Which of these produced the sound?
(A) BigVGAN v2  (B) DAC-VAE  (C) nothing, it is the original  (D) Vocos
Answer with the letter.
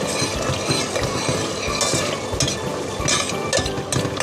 C